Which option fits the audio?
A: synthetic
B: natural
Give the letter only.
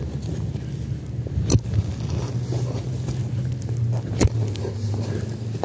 B